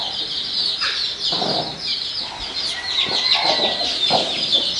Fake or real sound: real